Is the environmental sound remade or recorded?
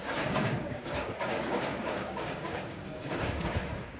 remade